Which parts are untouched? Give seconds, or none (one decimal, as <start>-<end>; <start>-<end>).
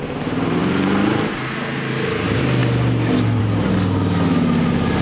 0.0-5.0